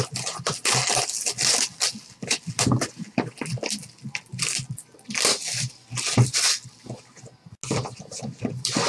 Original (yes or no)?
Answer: yes